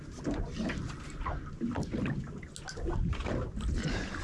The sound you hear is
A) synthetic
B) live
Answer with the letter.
B